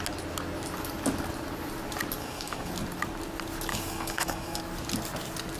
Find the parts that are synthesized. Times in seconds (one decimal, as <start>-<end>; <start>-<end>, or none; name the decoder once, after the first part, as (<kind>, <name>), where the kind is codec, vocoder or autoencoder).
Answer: 2.2-2.7 (codec, DAC); 3.7-4.6